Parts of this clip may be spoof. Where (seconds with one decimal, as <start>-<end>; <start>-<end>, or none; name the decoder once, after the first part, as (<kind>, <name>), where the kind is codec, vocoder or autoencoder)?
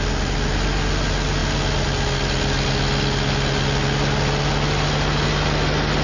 none